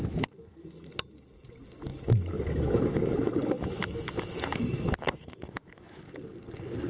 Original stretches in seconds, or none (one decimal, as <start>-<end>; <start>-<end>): 0.9-1.9; 6.0-6.9